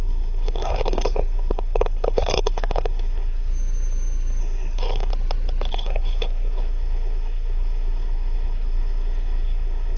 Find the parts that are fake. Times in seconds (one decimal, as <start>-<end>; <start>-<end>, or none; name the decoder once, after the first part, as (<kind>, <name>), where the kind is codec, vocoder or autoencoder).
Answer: 0.0-3.5 (codec, SNAC); 4.4-5.1; 5.7-10.0